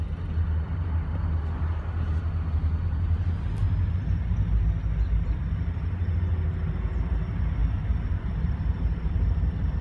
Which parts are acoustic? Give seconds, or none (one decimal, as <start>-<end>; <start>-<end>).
0.0-4.8; 6.2-7.6